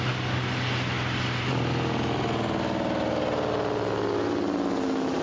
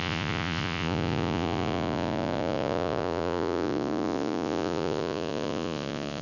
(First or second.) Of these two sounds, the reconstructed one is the second